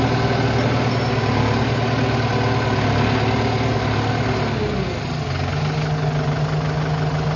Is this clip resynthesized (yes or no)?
no